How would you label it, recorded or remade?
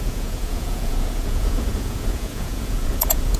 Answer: remade